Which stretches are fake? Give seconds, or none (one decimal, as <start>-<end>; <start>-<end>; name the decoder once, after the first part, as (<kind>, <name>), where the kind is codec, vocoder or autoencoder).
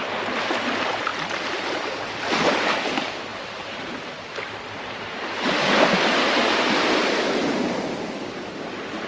1.1-1.9 (vocoder, BigVGAN v2); 3.3-8.5